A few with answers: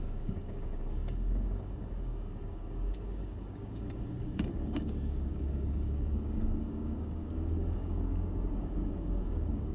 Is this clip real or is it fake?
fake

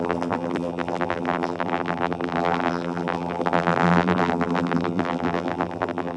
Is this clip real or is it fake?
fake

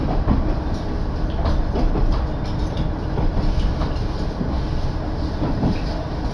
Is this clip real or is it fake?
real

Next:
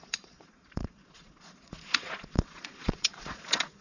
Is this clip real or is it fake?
fake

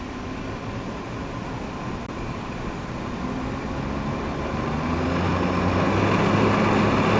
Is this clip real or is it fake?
real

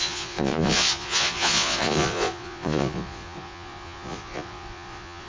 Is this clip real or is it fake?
fake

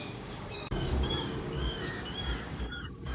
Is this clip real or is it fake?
fake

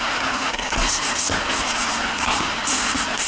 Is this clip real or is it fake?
fake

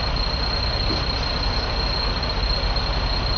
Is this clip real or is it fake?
real